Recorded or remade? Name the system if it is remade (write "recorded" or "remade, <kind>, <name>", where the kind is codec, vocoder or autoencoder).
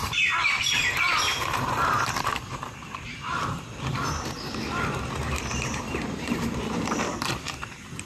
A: remade, vocoder, BigVGAN v2